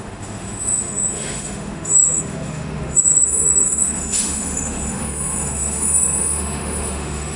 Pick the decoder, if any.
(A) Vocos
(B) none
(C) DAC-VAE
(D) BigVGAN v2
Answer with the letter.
C